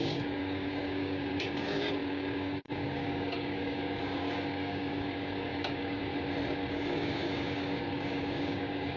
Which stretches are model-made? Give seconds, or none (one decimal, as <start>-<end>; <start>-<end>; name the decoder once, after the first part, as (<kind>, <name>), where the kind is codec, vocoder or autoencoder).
0.0-6.1 (codec, DAC); 6.7-9.0